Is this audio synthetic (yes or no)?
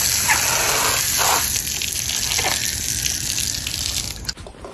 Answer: no